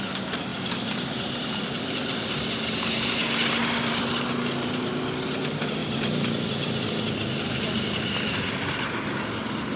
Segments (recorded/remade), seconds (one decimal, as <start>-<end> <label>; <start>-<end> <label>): 0.0-0.5 recorded; 0.5-3.2 remade; 3.2-3.6 recorded; 3.6-4.1 remade; 4.1-5.8 recorded; 5.8-8.0 remade; 8.0-9.8 recorded